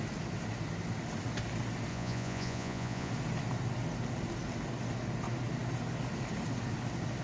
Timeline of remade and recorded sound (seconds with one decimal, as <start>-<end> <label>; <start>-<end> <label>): 0.0-1.9 recorded; 1.9-3.1 remade; 3.1-7.2 recorded